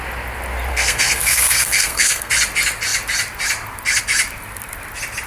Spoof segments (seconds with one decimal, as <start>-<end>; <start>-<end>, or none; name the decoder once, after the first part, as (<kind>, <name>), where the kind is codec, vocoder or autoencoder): 0.7-2.3 (codec, SNAC)

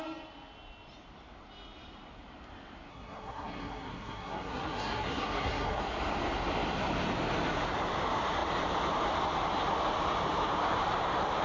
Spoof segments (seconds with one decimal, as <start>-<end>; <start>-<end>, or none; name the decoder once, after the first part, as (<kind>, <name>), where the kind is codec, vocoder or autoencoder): 2.9-5.8 (codec, SNAC)

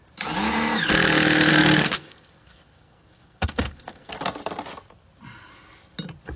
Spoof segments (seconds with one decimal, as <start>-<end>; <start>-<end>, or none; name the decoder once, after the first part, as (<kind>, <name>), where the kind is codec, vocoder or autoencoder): 1.5-4.1 (codec, SNAC)

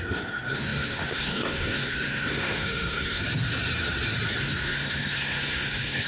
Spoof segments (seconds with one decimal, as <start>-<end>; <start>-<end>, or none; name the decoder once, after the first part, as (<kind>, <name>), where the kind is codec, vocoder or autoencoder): 0.0-3.2 (codec, SNAC); 4.4-6.1

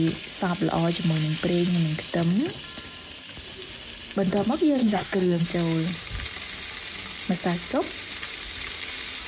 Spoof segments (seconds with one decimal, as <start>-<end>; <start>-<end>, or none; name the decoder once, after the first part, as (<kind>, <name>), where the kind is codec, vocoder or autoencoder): 4.8-5.4 (codec, SNAC)

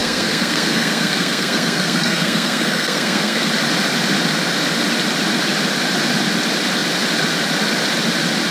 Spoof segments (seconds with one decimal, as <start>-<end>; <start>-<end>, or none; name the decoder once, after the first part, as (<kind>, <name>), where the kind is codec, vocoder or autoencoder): 0.0-3.5 (codec, SNAC)